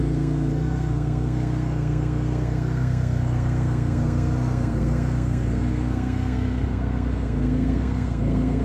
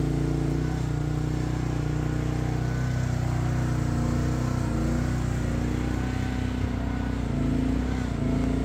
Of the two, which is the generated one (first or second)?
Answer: first